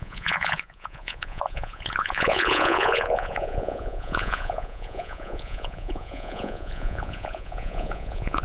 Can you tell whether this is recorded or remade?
remade